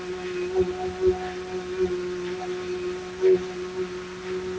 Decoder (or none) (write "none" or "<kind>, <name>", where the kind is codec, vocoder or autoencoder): none